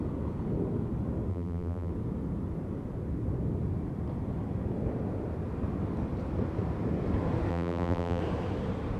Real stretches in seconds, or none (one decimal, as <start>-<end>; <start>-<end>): 0.0-1.3; 1.9-7.5; 8.2-9.0